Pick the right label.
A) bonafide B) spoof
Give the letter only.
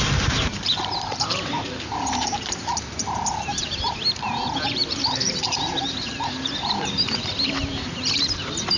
B